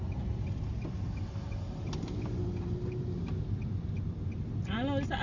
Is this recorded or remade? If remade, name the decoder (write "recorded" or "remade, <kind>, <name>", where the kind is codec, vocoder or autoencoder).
recorded